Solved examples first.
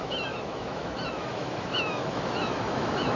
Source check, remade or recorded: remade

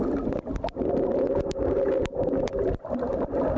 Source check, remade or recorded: recorded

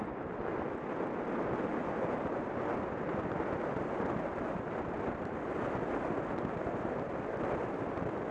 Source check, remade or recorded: recorded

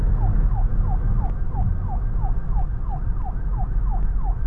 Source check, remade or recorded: recorded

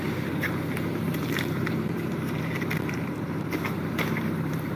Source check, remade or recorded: remade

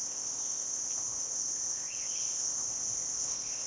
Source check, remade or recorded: remade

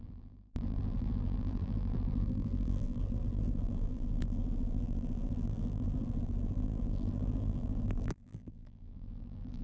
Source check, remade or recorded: remade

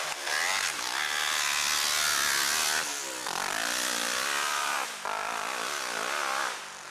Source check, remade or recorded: recorded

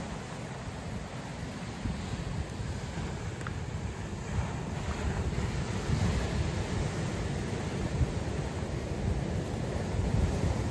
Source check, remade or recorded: recorded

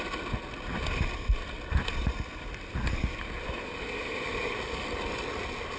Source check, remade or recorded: recorded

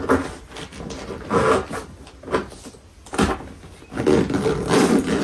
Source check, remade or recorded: recorded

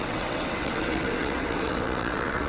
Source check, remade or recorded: remade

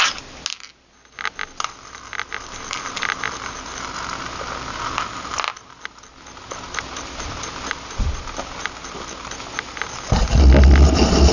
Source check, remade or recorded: recorded